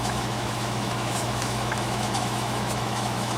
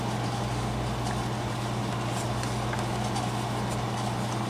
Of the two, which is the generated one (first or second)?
first